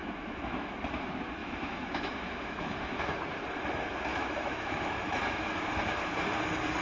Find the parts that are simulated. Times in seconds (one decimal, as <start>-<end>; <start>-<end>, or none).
0.0-0.7; 1.4-3.0; 4.1-5.7